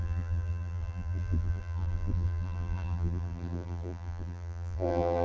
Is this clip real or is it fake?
fake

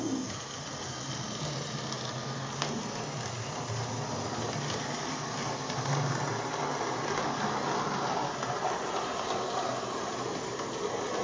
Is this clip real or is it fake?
real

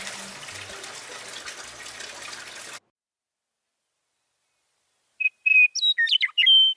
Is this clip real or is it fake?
real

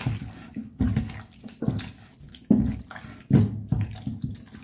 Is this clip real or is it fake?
real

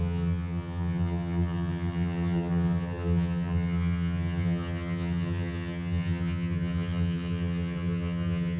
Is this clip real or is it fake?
fake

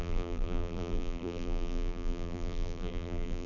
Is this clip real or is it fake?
fake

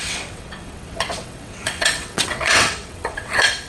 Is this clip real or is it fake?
fake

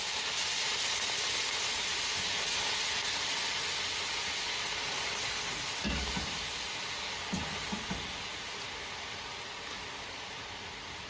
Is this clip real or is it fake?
real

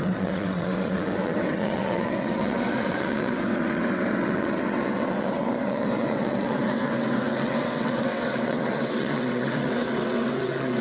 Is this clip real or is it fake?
fake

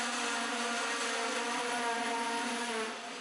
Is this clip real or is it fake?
real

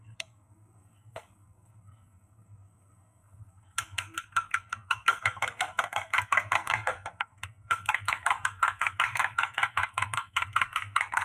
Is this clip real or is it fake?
fake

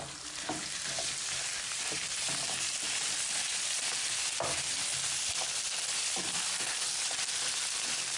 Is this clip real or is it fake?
real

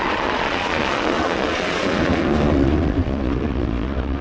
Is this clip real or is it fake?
fake